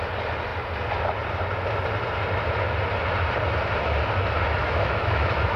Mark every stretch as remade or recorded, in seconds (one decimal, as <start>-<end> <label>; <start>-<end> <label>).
0.0-4.6 recorded; 4.6-5.6 remade